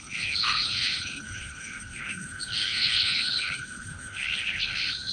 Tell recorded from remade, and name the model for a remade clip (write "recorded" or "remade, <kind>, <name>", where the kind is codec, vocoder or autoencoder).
remade, codec, HILCodec